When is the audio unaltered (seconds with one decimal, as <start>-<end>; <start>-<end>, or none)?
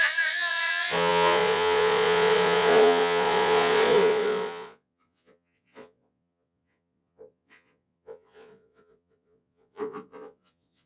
none